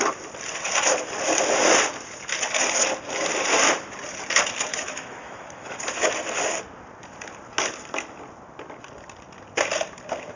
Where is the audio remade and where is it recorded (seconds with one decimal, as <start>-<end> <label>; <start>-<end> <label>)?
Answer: 0.0-4.7 recorded; 4.7-5.7 remade; 5.7-10.4 recorded